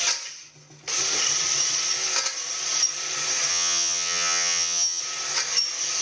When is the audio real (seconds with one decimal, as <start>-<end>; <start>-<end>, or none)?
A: 0.0-3.5; 5.0-6.0